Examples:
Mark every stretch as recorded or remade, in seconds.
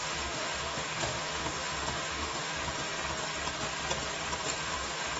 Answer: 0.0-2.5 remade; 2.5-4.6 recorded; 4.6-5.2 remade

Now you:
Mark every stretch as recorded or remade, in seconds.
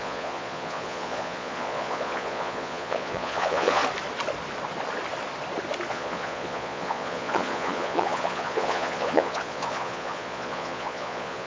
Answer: 0.0-3.8 remade; 3.8-5.9 recorded; 5.9-11.5 remade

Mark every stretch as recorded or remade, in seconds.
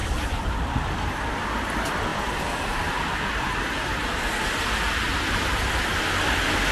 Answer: 0.0-0.8 remade; 0.8-5.1 recorded; 5.1-5.8 remade; 5.8-6.7 recorded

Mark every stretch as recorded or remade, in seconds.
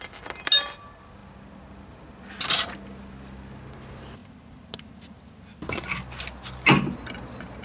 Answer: 0.0-7.6 recorded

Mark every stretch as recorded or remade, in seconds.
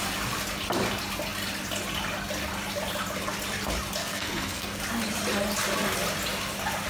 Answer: 0.0-4.0 recorded; 4.0-4.8 remade; 4.8-6.9 recorded